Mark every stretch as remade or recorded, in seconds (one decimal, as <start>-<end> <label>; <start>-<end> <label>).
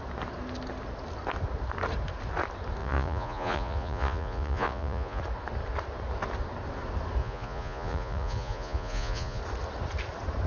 0.0-2.8 recorded; 2.8-5.2 remade; 5.2-7.2 recorded; 7.2-9.4 remade; 9.4-10.5 recorded